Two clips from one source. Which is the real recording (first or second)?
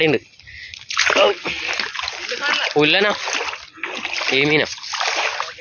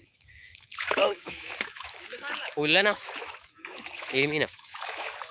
first